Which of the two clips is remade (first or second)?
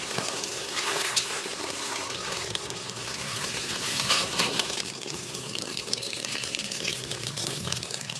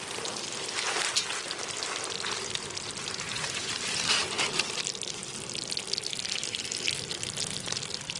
first